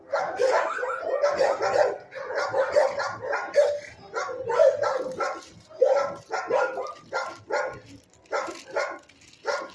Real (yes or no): yes